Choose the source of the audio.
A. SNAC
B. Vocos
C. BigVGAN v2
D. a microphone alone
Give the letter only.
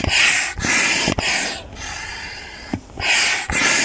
D